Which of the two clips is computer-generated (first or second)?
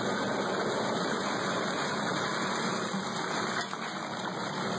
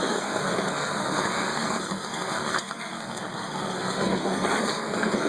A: second